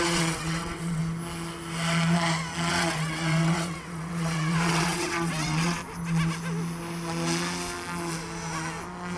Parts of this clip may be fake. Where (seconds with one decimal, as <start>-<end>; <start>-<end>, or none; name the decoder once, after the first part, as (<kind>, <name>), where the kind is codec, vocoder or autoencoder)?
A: 0.0-1.0 (vocoder, WaveNeXt); 2.7-5.8